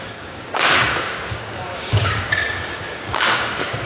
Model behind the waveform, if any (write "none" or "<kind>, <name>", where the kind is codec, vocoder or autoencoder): codec, DAC